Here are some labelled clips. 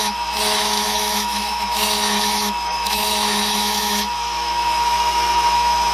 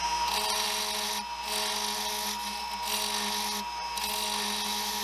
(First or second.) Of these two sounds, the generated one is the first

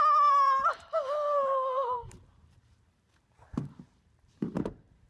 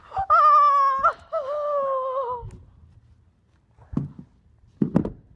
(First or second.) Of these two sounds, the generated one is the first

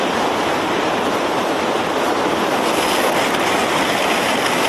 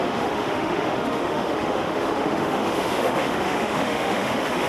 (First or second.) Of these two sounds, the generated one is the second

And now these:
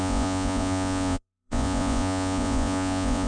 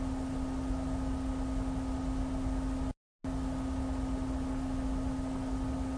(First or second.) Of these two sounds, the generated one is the first